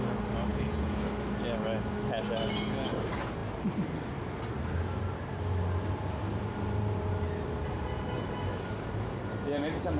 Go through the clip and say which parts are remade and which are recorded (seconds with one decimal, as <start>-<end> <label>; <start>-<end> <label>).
0.0-0.5 recorded; 0.5-1.0 remade; 1.0-10.0 recorded